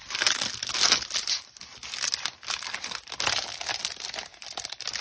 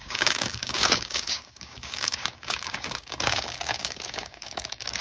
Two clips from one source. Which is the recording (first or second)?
first